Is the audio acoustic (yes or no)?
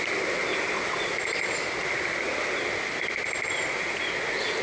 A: yes